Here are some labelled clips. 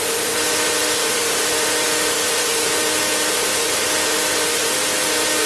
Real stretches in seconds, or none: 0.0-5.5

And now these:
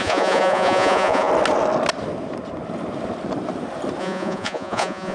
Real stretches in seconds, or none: 1.3-4.0

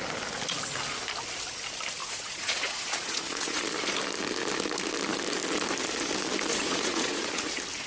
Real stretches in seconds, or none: 0.0-2.0; 3.6-6.5; 7.3-7.9

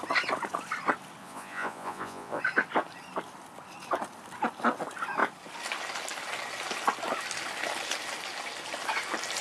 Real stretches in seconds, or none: 0.0-1.2; 2.4-9.4